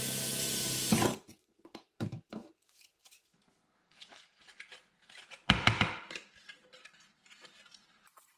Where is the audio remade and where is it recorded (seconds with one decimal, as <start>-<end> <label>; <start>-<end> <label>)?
0.0-1.1 recorded; 1.1-4.4 remade; 4.4-8.4 recorded